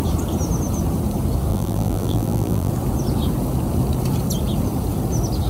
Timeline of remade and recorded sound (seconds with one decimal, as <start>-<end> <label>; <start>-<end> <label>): 0.0-1.5 recorded; 1.5-2.7 remade; 2.7-5.5 recorded